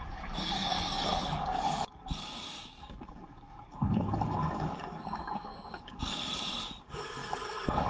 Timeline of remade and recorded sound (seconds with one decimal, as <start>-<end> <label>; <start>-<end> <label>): 0.0-7.9 remade